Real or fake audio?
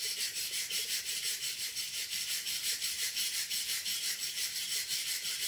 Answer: fake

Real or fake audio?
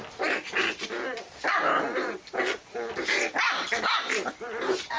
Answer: real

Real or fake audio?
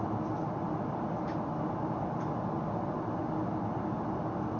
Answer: real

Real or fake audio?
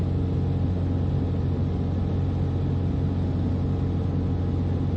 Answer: real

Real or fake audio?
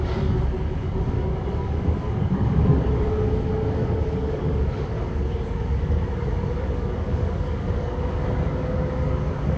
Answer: fake